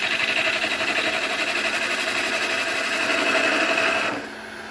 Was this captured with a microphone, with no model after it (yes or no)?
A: yes